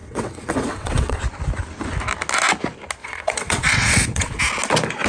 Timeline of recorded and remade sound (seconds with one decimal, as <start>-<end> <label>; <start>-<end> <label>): 0.0-1.2 remade; 1.2-3.0 recorded; 3.0-4.4 remade; 4.4-5.1 recorded